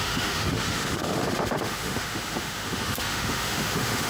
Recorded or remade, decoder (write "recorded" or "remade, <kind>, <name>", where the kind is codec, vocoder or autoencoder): remade, autoencoder, DAC-VAE